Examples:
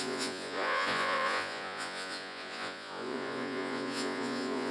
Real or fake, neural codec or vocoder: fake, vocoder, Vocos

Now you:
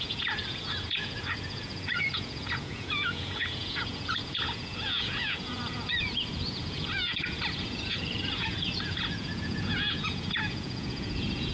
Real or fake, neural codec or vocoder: fake, vocoder, Vocos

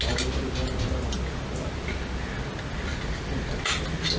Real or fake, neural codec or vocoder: real